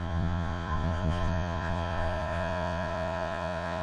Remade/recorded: remade